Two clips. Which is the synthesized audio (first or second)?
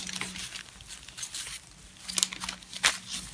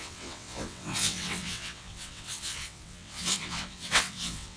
second